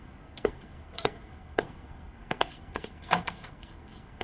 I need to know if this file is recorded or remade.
remade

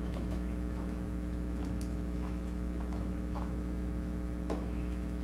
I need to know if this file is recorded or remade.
remade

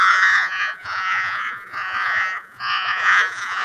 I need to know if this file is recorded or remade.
remade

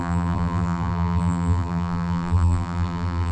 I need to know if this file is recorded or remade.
remade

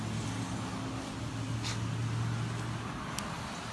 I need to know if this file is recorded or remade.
recorded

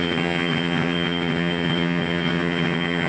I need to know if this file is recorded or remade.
remade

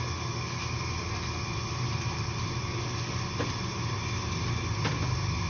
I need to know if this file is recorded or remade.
recorded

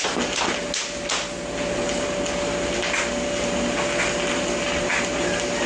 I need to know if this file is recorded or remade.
recorded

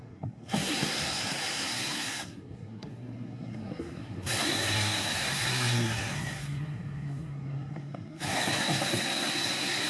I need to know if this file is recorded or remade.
remade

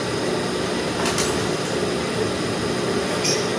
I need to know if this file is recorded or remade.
recorded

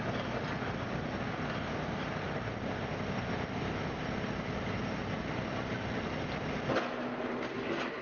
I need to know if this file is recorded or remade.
recorded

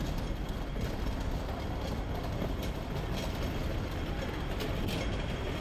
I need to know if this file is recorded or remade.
recorded